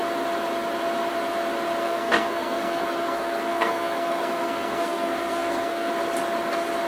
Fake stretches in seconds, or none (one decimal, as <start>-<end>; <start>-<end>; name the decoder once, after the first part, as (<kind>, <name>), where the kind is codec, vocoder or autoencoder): 1.8-5.9 (codec, SNAC)